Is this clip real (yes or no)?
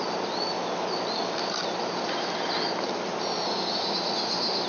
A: yes